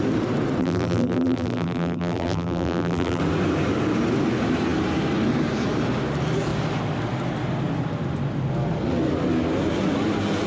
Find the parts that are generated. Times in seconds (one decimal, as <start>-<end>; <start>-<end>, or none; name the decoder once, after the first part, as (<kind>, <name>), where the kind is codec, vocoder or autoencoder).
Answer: 0.6-3.2 (vocoder, BigVGAN v2)